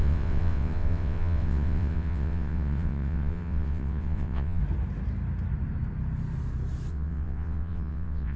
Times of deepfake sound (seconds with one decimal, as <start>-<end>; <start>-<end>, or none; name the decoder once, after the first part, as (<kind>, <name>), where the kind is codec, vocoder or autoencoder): 0.0-4.6 (vocoder, WaveNeXt); 6.9-8.4